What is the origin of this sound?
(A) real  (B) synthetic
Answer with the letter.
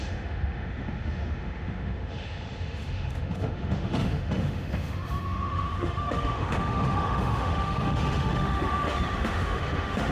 B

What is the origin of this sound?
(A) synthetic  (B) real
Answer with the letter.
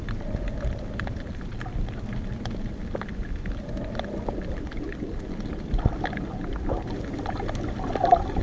B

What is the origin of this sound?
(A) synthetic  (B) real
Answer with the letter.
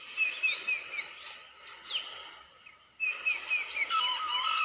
B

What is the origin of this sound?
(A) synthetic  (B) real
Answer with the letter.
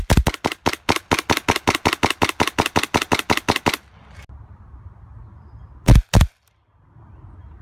B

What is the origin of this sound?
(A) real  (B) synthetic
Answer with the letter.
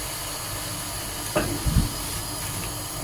A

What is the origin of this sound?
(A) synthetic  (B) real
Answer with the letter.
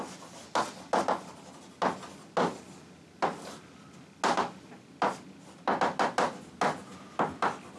B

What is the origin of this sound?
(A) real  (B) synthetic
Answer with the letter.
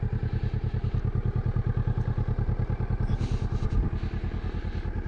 A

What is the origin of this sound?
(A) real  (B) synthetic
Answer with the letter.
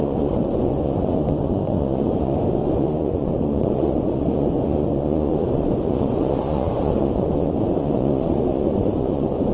B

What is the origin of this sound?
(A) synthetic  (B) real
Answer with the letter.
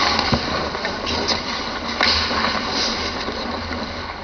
B